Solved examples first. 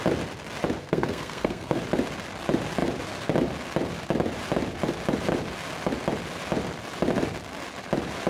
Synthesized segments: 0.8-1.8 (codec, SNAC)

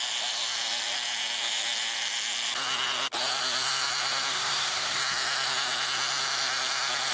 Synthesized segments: 4.3-5.0 (codec, SNAC)

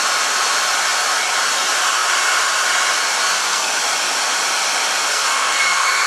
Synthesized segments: 3.3-3.8 (codec, SNAC); 5.1-6.1

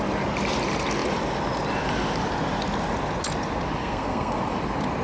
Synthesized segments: 3.8-4.4 (codec, SNAC)

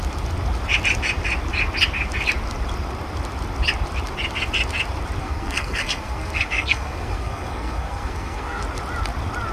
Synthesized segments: 5.2-8.6 (codec, SNAC)

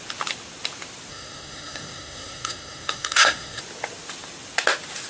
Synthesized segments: 1.1-3.6 (codec, SNAC)

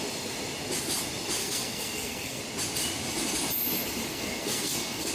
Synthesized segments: 1.4-2.4 (codec, SNAC); 4.1-5.1

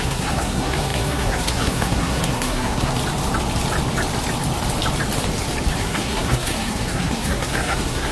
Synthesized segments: 0.0-2.9 (codec, SNAC); 5.8-8.1